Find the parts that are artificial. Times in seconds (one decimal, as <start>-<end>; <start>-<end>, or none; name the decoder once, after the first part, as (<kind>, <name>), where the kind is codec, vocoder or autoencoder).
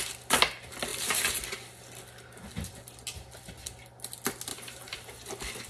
4.5-5.1 (vocoder, BigVGAN v2)